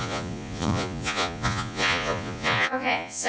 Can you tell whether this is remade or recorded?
remade